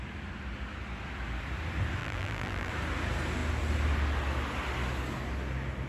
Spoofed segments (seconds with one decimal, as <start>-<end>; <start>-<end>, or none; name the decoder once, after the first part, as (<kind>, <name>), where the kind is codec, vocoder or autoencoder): 2.0-2.7 (vocoder, BigVGAN v2)